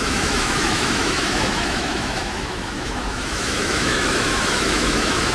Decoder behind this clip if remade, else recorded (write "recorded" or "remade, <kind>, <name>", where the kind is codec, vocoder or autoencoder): remade, autoencoder, DAC-VAE